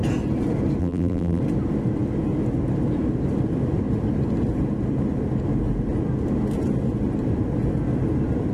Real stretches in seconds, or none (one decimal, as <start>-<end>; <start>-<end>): 0.0-0.8; 1.4-8.5